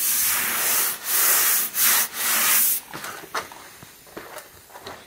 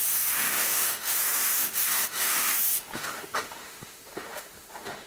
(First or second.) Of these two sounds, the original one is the first